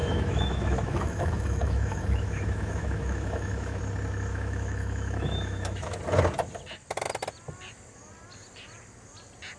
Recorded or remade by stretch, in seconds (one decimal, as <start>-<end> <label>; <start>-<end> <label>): 0.0-3.8 remade; 3.8-4.3 recorded; 4.3-6.0 remade; 6.0-9.6 recorded